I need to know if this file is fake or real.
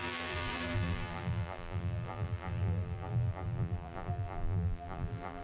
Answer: fake